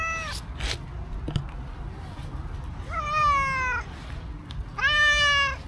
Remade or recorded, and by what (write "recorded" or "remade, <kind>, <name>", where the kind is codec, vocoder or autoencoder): recorded